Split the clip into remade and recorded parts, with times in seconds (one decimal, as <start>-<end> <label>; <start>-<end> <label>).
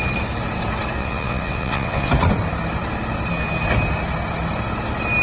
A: 0.0-1.0 recorded; 1.0-2.1 remade; 2.1-5.2 recorded